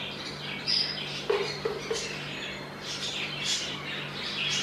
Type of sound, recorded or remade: recorded